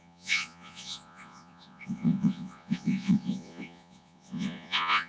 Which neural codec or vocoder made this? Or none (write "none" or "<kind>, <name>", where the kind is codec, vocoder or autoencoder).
vocoder, Vocos